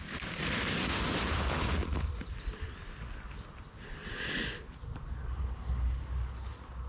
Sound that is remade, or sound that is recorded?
recorded